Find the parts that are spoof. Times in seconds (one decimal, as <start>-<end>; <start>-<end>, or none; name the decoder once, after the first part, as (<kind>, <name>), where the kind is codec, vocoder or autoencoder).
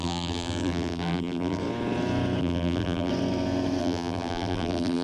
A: 0.0-1.6 (vocoder, BigVGAN v2); 2.4-3.1; 3.8-5.0